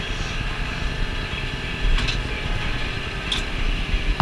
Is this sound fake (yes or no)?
yes